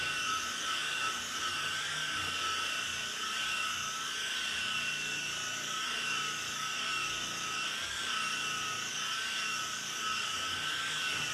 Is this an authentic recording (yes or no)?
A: no